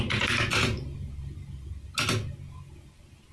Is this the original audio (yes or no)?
yes